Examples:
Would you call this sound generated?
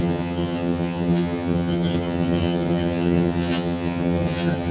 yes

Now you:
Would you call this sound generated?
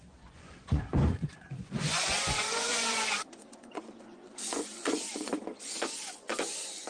yes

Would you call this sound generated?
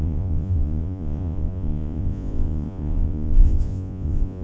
yes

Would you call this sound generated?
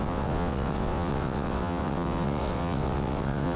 yes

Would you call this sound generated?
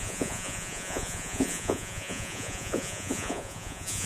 yes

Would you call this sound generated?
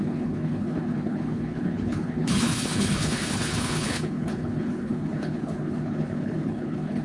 yes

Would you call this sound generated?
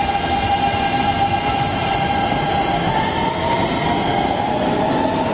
no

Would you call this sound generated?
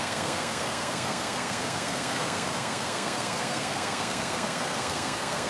yes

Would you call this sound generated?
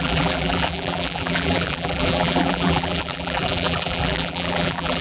yes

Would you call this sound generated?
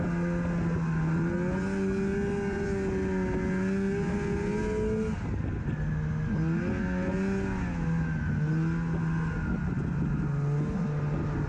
no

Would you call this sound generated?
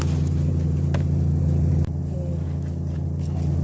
no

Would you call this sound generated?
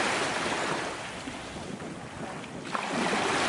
no